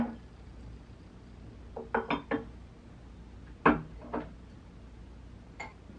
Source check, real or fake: real